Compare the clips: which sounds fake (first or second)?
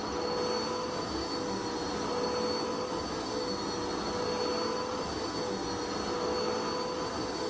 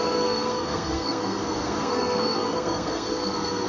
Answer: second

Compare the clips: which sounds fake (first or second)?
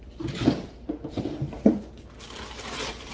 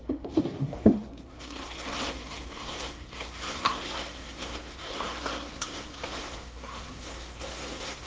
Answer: second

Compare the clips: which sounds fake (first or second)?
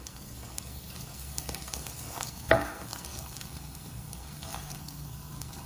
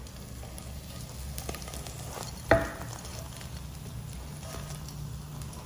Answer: first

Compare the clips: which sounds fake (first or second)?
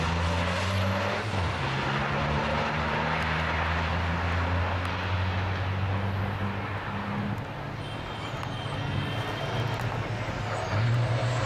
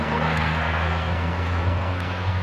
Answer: second